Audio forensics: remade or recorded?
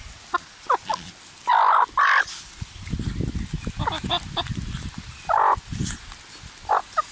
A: recorded